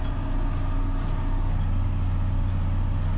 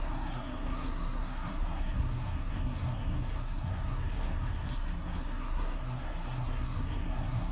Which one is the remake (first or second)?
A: second